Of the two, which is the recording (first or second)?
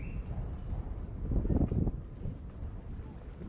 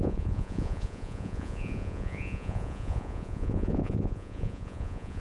first